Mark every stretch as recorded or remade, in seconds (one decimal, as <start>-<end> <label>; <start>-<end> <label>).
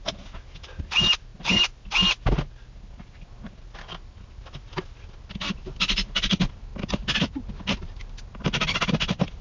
0.0-9.4 recorded